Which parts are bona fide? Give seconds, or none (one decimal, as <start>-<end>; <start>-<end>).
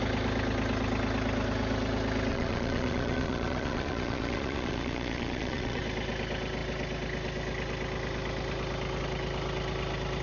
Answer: 0.0-2.3; 5.8-10.2